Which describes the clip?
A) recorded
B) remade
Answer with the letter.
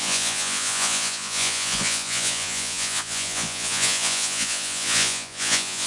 B